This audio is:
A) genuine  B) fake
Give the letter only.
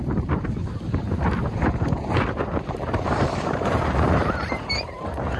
B